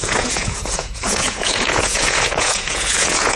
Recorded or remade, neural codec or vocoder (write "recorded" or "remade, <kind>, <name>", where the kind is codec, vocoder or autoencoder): remade, vocoder, Vocos